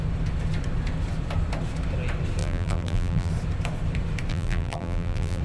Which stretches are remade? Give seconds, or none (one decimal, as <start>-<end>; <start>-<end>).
2.4-3.3; 4.3-5.4